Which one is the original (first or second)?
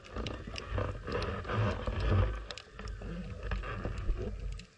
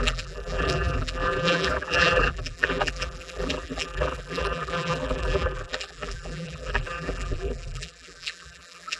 first